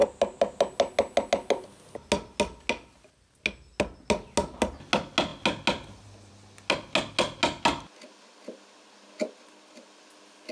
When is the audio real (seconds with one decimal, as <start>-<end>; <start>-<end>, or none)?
0.0-10.5